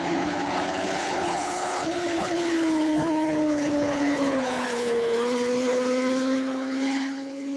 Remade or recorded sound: remade